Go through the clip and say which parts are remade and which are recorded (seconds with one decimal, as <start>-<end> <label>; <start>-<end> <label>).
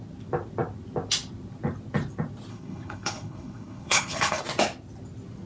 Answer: 0.0-2.5 recorded; 2.5-4.4 remade; 4.4-5.5 recorded